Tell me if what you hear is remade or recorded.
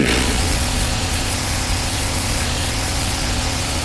remade